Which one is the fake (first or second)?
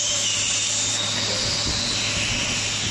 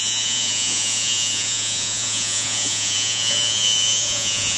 second